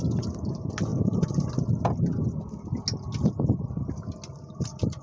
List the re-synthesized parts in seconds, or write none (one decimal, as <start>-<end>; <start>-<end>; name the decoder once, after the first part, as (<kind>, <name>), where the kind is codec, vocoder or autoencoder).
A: none